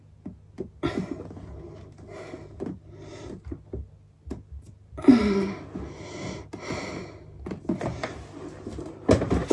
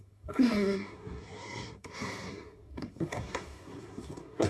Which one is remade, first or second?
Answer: second